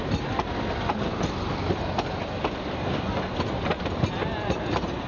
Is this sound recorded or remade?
recorded